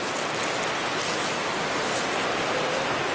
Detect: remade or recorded recorded